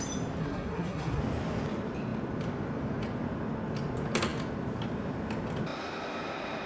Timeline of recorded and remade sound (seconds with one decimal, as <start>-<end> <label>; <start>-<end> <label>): 0.0-0.4 recorded; 0.4-1.2 remade; 1.2-6.7 recorded